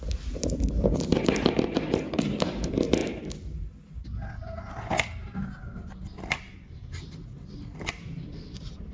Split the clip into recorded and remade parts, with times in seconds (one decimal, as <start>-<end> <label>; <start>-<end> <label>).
0.0-3.0 remade; 3.0-7.9 recorded; 7.9-8.9 remade